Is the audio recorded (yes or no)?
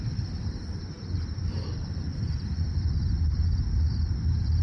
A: no